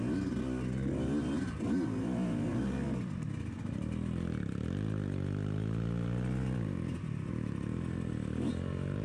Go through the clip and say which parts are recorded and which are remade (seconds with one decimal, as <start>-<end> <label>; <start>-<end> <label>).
0.0-2.5 recorded; 2.5-7.3 remade; 7.3-9.0 recorded